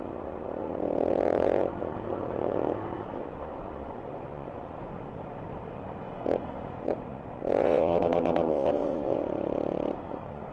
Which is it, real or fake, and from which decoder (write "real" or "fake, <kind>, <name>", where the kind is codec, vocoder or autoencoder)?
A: fake, vocoder, Vocos